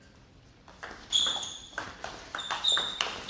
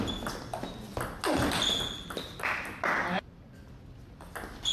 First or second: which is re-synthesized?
first